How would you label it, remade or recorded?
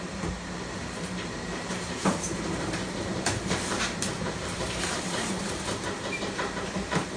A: remade